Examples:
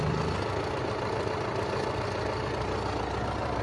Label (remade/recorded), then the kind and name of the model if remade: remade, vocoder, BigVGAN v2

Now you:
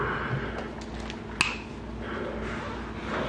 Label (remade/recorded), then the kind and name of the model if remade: recorded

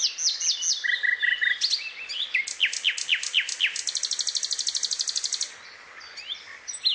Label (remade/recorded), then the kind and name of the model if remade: recorded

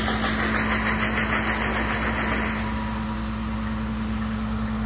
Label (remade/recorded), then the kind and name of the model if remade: recorded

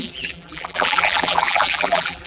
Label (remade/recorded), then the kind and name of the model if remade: remade, vocoder, BigVGAN v2